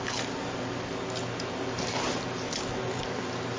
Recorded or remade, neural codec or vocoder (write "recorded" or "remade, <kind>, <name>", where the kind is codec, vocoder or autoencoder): recorded